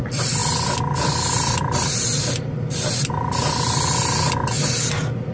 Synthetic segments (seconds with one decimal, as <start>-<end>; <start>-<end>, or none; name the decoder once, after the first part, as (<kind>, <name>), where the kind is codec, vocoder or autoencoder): none